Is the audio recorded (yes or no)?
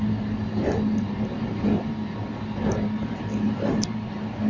yes